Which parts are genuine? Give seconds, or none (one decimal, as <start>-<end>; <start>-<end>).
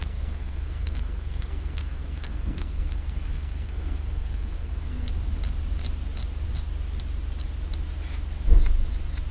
5.1-9.3